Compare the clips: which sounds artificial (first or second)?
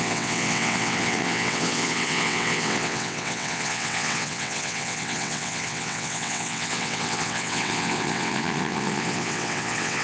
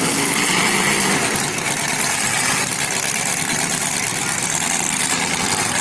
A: first